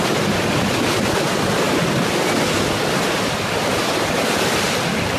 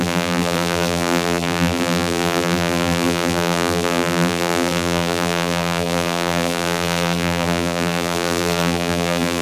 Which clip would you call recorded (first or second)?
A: first